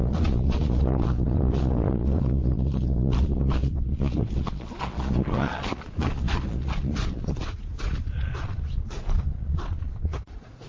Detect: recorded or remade remade